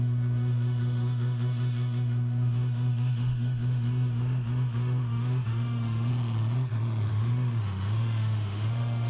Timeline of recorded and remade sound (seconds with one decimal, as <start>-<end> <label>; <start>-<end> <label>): 0.0-6.1 remade; 6.1-7.1 recorded; 7.1-9.1 remade